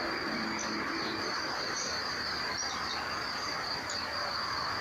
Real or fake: real